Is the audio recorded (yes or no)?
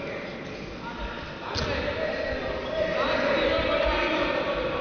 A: yes